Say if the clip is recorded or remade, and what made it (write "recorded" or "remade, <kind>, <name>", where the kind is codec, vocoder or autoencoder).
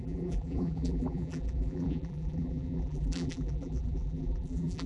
remade, vocoder, BigVGAN v2